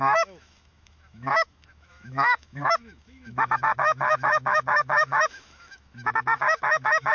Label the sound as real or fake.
fake